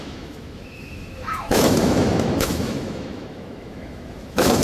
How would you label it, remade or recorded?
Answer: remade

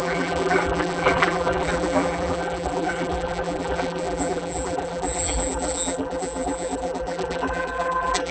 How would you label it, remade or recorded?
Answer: remade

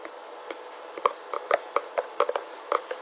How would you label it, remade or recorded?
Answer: recorded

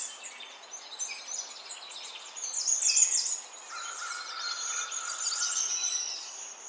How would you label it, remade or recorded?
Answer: recorded